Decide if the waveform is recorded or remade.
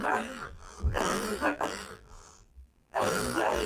remade